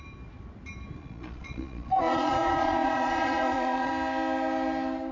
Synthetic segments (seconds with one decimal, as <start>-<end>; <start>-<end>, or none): 1.0-3.9